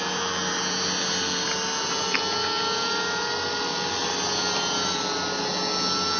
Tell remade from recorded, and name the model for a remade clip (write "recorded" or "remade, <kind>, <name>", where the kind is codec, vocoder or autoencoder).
recorded